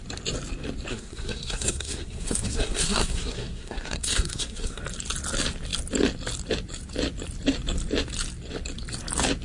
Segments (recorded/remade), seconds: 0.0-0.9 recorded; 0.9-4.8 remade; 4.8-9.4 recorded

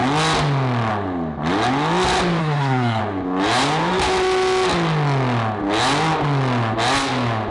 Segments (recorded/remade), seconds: 0.0-2.4 recorded; 2.4-3.0 remade; 3.0-7.5 recorded